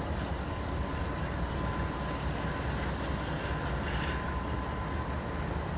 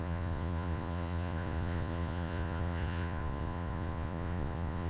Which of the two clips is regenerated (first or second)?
second